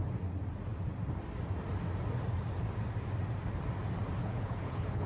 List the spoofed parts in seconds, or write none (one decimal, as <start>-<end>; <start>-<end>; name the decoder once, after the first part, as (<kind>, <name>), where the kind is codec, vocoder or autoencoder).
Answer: 4.2-5.1 (codec, HILCodec)